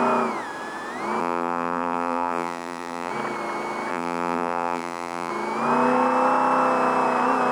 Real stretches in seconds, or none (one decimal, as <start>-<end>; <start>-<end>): 0.0-1.2; 3.1-3.9; 5.3-7.5

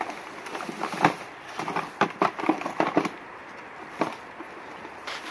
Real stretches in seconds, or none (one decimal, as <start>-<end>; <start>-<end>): 0.0-0.5; 3.7-5.3

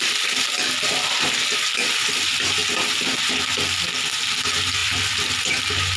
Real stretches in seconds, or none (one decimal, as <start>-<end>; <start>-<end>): 0.0-6.0